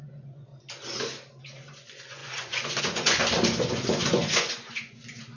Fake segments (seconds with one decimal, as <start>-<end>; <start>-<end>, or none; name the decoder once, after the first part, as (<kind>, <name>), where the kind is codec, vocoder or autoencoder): 0.0-0.5 (vocoder, Vocos); 1.4-3.2; 3.7-5.4